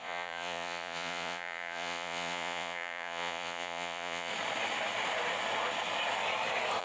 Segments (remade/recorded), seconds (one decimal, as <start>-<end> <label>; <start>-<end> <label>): 0.0-4.3 remade; 4.3-6.8 recorded